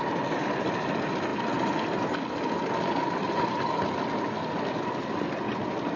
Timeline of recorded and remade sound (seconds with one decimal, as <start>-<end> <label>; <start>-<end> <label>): 0.0-6.0 recorded